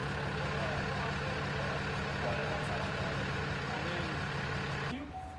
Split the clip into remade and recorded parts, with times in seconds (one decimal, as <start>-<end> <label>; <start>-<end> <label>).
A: 0.0-2.4 recorded; 2.4-3.3 remade; 3.3-5.4 recorded